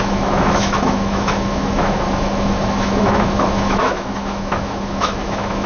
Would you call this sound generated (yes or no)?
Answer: yes